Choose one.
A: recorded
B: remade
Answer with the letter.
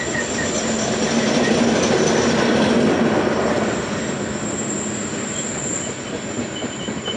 A